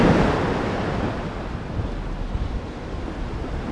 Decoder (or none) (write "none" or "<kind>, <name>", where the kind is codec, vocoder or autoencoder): none